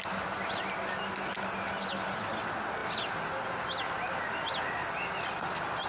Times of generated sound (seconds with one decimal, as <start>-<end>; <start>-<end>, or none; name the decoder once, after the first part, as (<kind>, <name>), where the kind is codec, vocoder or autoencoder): none